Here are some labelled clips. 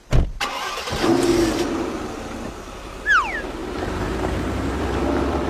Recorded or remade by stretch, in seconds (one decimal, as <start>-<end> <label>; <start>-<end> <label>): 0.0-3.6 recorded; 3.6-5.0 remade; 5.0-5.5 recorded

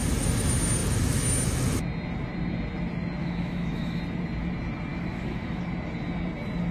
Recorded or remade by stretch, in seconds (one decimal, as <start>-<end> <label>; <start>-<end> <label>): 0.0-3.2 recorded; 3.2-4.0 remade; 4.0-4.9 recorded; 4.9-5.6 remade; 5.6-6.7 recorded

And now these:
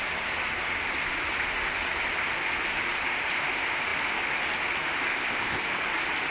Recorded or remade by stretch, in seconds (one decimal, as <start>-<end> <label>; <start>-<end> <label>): 0.0-5.1 recorded; 5.1-5.6 remade; 5.6-6.3 recorded